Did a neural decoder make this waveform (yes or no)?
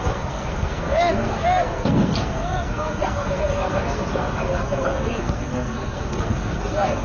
yes